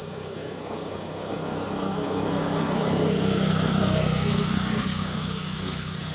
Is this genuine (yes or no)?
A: no